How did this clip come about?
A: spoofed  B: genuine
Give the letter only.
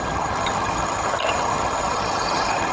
A